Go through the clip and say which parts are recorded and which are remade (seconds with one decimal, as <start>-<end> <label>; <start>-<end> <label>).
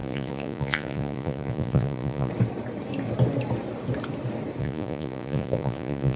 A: 0.0-2.3 remade; 2.3-4.6 recorded; 4.6-6.2 remade